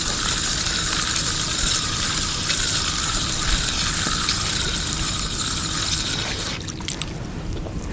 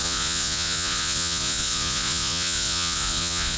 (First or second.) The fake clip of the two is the second